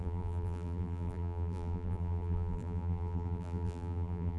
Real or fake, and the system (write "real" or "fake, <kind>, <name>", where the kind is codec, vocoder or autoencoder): fake, vocoder, BigVGAN v2